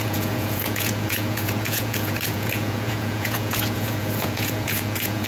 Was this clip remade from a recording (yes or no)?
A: yes